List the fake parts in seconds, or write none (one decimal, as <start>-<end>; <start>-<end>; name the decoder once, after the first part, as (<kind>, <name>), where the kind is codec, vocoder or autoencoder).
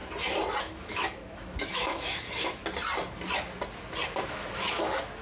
0.6-2.6 (autoencoder, DAC-VAE); 4.3-5.2